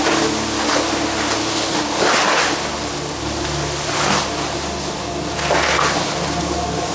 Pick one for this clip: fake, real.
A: real